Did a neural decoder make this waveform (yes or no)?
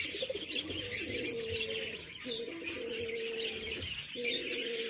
no